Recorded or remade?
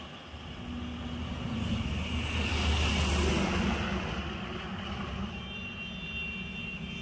recorded